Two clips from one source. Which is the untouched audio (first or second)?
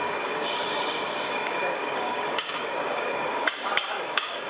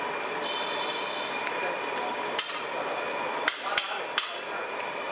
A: second